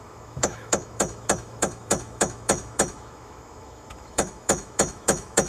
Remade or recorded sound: remade